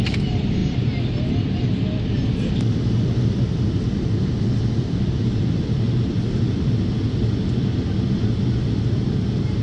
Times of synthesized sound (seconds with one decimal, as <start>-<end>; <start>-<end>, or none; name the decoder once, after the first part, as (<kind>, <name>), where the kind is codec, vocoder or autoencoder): none